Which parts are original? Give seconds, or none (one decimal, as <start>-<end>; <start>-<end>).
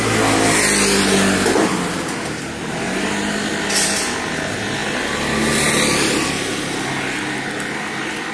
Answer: 0.0-8.3